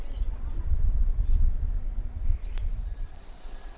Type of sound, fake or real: fake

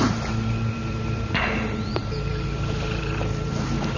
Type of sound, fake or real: fake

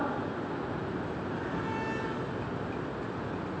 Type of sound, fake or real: real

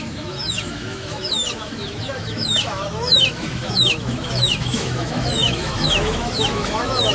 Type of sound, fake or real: fake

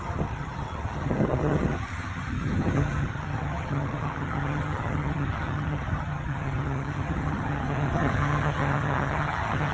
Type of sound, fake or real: fake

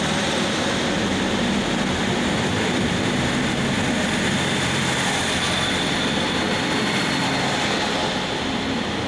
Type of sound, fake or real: fake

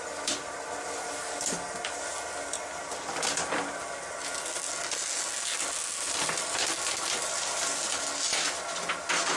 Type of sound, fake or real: real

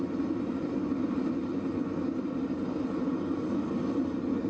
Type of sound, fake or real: fake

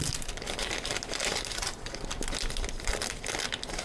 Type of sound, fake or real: real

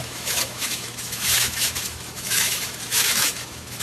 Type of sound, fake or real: fake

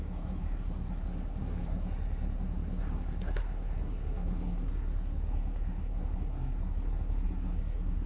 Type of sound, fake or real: fake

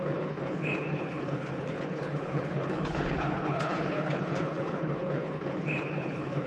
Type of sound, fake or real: fake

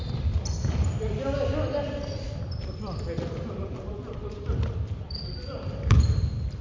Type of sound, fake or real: fake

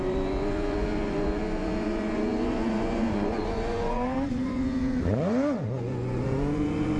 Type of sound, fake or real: fake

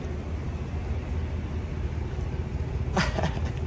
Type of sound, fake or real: real